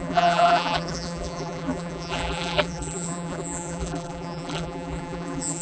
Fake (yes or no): yes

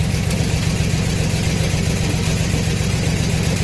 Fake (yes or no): no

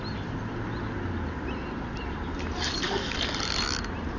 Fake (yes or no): no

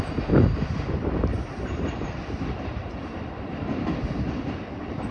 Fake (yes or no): yes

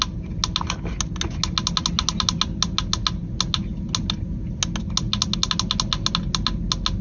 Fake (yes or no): no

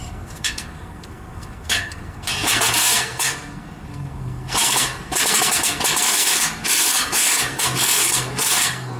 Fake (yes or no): yes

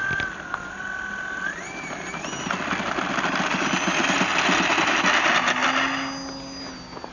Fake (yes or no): no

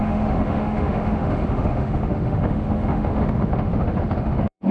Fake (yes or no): yes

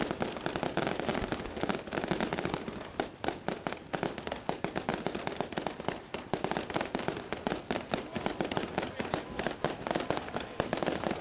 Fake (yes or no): no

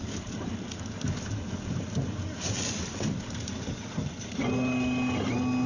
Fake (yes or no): no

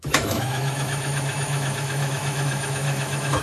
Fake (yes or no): yes